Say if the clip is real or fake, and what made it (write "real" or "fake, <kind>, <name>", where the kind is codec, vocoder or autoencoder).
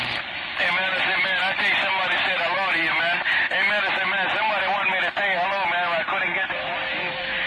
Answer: real